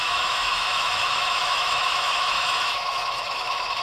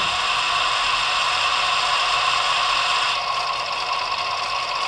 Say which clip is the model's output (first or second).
first